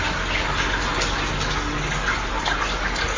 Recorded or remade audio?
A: recorded